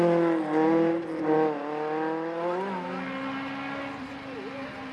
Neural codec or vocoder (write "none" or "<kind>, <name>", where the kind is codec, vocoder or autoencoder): none